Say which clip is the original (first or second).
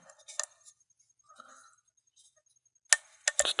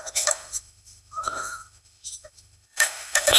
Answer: first